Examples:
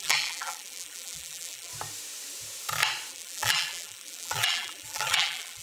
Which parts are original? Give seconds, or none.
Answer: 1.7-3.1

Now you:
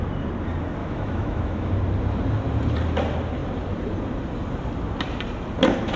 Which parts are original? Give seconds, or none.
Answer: 0.0-0.8; 1.7-6.0

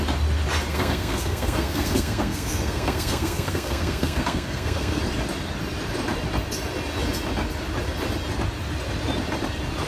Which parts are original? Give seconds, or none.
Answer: 0.0-0.7; 5.0-9.9

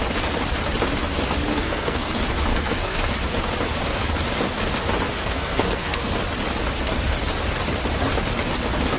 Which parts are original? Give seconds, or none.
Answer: 0.0-1.5; 2.1-2.5; 3.1-5.2; 6.1-9.0

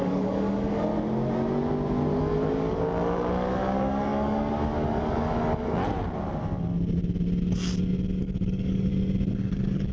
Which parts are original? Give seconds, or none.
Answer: 0.9-2.2; 5.8-8.2; 8.9-9.5